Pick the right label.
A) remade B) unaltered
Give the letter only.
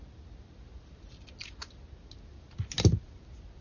B